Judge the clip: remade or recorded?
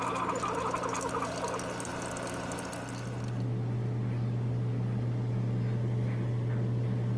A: recorded